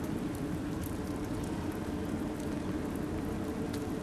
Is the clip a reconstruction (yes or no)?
no